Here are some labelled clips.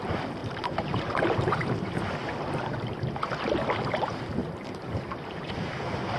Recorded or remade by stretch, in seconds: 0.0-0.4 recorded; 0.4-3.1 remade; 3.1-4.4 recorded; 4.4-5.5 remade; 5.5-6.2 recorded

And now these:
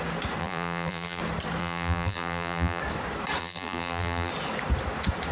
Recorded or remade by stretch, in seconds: 0.0-0.4 recorded; 0.4-1.2 remade; 1.2-1.6 recorded; 1.6-2.8 remade; 2.8-3.4 recorded; 3.4-4.3 remade; 4.3-5.3 recorded

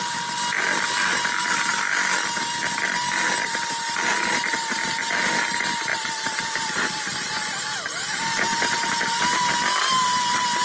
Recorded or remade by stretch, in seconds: 0.0-5.9 recorded; 5.9-9.5 remade; 9.5-10.6 recorded